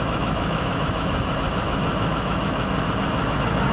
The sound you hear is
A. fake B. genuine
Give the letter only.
A